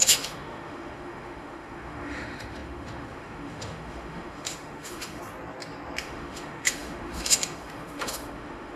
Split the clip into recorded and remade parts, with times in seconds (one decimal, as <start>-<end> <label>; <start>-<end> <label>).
0.0-5.2 remade; 5.2-6.0 recorded; 6.0-8.8 remade